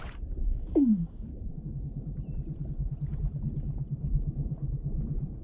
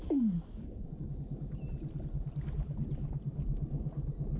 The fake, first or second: first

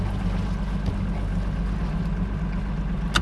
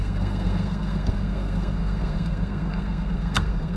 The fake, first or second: second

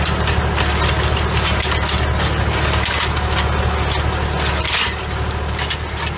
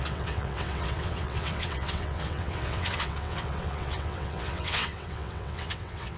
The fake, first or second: second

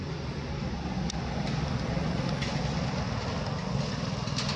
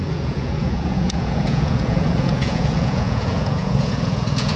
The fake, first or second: second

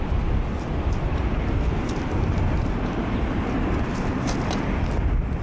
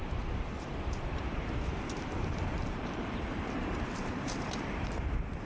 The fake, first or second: second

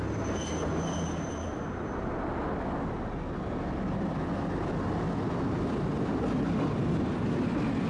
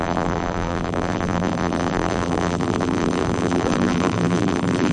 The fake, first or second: second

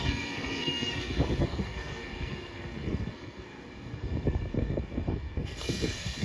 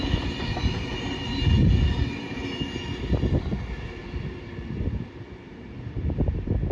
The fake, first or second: first